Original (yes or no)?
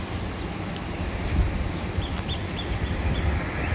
yes